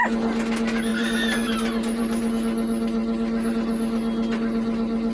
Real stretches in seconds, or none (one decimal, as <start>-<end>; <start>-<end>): 0.0-0.9; 2.3-5.1